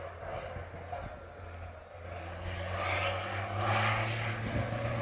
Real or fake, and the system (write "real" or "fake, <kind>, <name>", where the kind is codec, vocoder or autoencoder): real